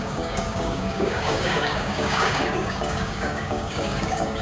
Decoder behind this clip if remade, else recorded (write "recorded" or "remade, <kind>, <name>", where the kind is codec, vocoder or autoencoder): remade, codec, DAC